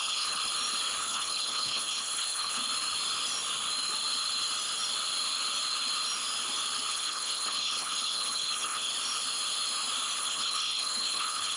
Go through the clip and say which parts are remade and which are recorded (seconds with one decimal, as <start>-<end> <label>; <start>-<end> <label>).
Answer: 0.0-0.4 remade; 0.4-1.0 recorded; 1.0-2.6 remade; 2.6-6.9 recorded; 6.9-8.9 remade; 8.9-10.2 recorded; 10.2-11.6 remade